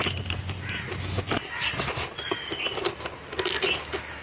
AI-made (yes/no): no